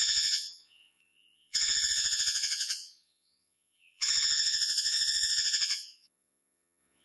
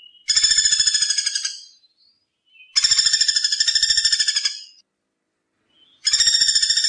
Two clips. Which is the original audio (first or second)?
second